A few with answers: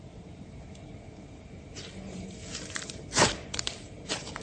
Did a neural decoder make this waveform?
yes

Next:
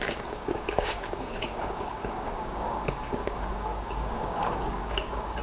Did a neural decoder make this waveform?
yes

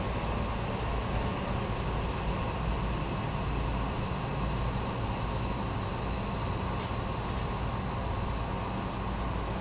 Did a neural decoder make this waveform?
no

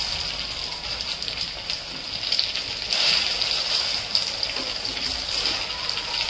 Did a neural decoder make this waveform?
no